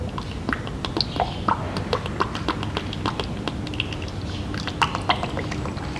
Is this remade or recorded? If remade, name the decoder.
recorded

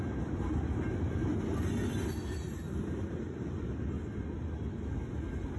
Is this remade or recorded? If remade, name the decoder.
recorded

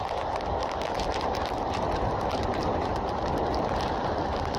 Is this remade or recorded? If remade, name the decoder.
remade, vocoder, BigVGAN v2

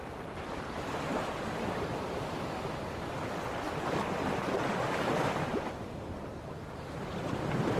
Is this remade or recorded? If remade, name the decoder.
remade, vocoder, BigVGAN v2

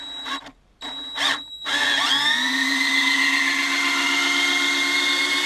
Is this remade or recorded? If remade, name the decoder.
recorded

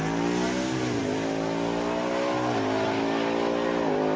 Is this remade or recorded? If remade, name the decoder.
recorded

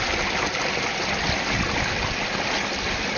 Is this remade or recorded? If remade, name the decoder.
recorded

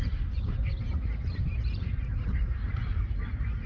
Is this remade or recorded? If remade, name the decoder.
remade, vocoder, BigVGAN v2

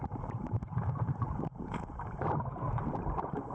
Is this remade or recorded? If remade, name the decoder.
remade, vocoder, BigVGAN v2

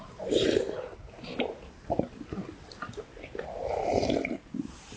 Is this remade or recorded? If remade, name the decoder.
remade, vocoder, BigVGAN v2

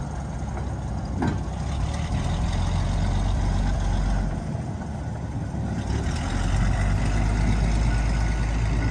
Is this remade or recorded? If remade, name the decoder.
recorded